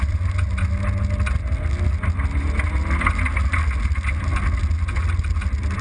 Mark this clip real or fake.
real